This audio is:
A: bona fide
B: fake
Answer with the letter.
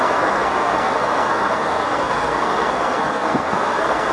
B